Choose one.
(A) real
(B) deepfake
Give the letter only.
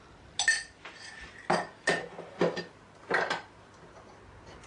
A